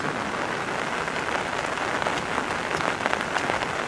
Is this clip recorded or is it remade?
recorded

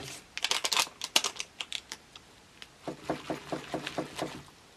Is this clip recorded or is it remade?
recorded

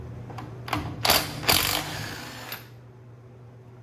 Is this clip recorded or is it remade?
recorded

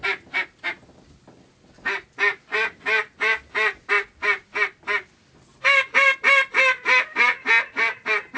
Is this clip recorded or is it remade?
recorded